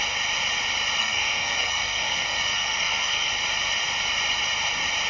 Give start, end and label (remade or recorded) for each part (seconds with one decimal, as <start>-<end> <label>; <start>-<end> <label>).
0.0-1.0 recorded; 1.0-3.3 remade; 3.3-5.1 recorded